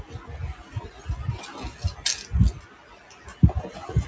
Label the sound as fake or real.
real